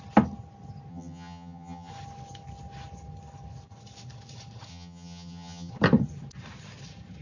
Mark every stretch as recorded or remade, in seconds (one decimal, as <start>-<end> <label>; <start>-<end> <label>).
0.0-0.9 recorded; 0.9-1.9 remade; 1.9-4.7 recorded; 4.7-5.7 remade; 5.7-7.2 recorded